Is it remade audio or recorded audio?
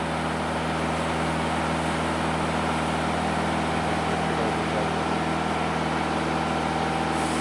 recorded